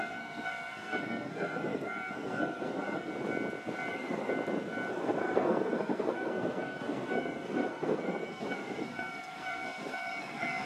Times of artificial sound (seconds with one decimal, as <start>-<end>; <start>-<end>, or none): 0.0-3.1; 3.9-4.3; 4.9-10.7